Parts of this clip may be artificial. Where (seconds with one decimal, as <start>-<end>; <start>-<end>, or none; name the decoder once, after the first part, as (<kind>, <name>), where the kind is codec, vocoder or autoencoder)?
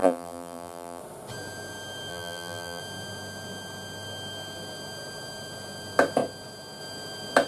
0.0-1.0 (vocoder, BigVGAN v2); 2.1-2.8